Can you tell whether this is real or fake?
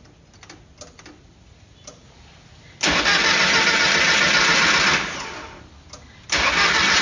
real